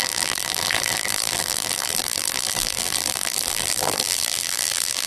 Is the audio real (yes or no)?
no